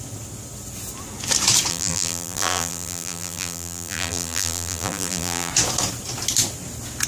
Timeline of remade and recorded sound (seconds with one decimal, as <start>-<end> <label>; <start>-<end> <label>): 0.0-1.7 recorded; 1.7-5.5 remade; 5.5-7.1 recorded